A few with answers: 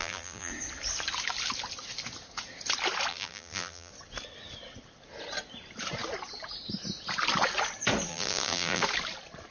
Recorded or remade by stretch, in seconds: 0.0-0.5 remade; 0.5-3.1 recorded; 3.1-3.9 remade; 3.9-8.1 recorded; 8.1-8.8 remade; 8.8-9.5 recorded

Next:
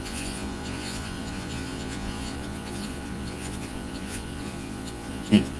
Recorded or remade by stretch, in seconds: 0.0-5.6 remade

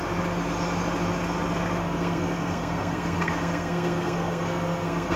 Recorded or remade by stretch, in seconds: 0.0-1.8 recorded; 1.8-5.2 remade

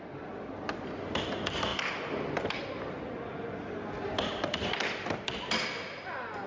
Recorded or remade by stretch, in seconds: 0.0-6.5 recorded

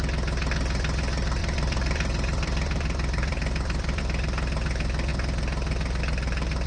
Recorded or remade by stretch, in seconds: 0.0-1.4 recorded; 1.4-4.0 remade; 4.0-6.7 recorded

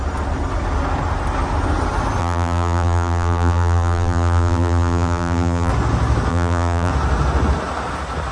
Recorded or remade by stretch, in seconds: 0.0-2.2 recorded; 2.2-5.7 remade; 5.7-6.3 recorded; 6.3-6.9 remade; 6.9-8.3 recorded

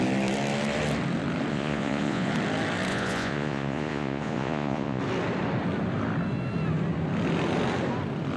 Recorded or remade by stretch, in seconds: 0.0-1.5 recorded; 1.5-2.3 remade; 2.3-2.9 recorded; 2.9-5.0 remade; 5.0-8.4 recorded

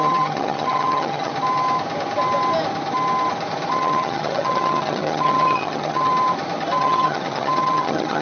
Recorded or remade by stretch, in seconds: 0.0-1.3 remade; 1.3-3.7 recorded; 3.7-6.1 remade; 6.1-6.8 recorded; 6.8-8.2 remade